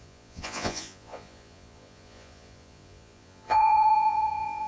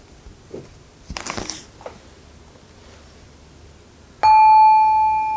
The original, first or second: second